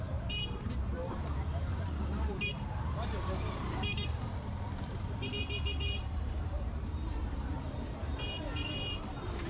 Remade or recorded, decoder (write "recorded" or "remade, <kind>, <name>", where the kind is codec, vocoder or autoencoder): remade, vocoder, BigVGAN v2